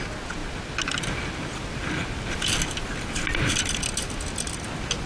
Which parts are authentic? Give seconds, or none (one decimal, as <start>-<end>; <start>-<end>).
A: 0.0-5.1